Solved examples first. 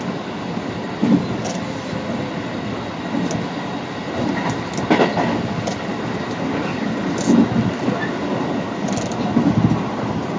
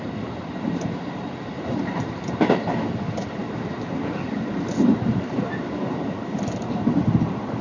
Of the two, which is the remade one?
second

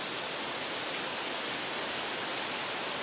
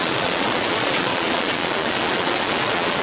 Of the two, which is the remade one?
second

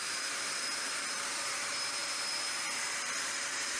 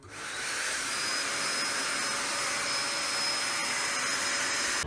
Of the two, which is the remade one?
first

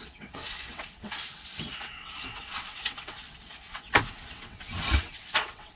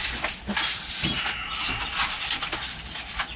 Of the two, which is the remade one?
first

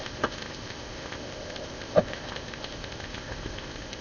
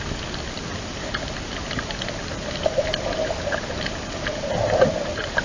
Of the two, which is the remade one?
first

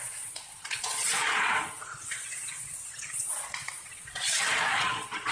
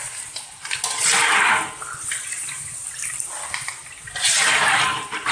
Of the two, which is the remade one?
first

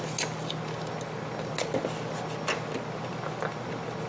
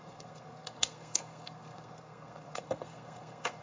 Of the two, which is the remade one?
second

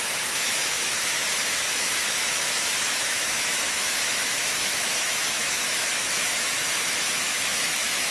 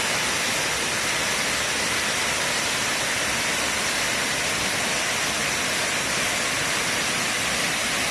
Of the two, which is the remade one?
first